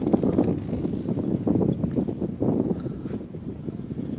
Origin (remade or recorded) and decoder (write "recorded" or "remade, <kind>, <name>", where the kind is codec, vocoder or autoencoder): recorded